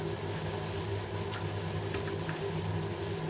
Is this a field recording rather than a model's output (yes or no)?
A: yes